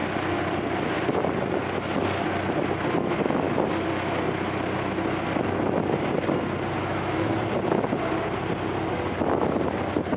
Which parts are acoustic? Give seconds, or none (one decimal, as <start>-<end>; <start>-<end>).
0.0-6.8; 7.3-10.2